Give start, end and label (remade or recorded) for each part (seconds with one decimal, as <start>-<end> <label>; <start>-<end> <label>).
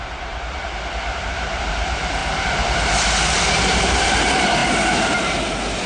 0.0-0.6 remade; 0.6-1.2 recorded; 1.2-2.2 remade; 2.2-3.8 recorded; 3.8-5.9 remade